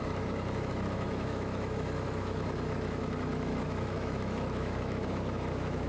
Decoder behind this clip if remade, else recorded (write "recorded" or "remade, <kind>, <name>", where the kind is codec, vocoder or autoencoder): remade, autoencoder, DAC-VAE